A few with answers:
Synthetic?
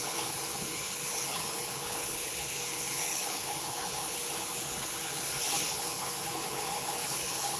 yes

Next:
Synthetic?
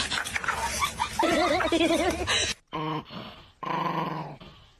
no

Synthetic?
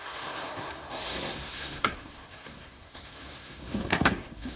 yes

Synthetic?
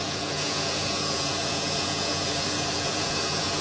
yes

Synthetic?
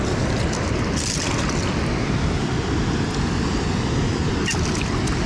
no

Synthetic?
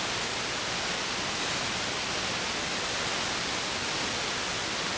no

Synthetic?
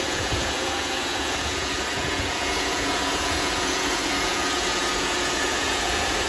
yes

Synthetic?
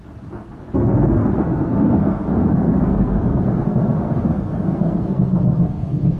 yes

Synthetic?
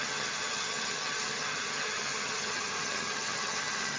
yes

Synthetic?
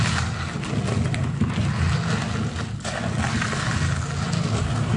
no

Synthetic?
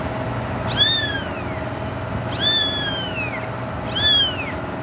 no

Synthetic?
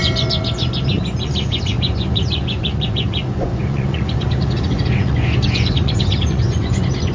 yes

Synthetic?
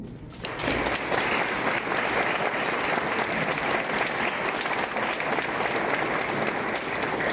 no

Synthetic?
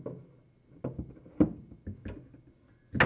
no